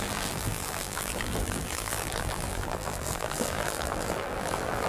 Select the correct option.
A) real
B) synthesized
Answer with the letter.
B